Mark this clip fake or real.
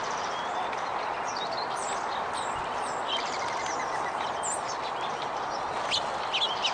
real